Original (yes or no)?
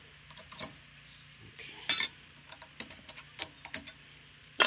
yes